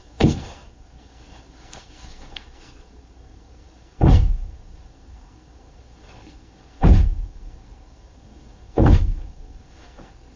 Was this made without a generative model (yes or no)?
no